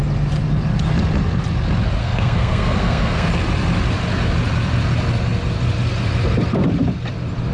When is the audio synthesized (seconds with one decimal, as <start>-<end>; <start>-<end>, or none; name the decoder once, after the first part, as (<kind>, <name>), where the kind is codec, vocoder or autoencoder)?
2.0-3.3 (codec, SNAC)